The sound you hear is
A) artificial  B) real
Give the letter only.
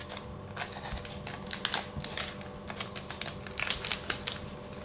B